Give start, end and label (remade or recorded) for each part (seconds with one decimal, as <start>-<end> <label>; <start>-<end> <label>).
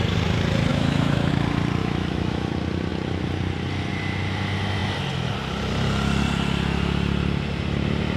0.0-0.7 recorded; 0.7-1.3 remade; 1.3-1.8 recorded; 1.8-2.5 remade; 2.5-8.2 recorded